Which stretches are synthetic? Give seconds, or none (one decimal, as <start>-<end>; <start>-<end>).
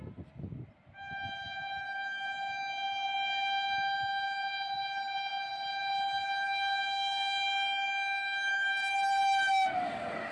none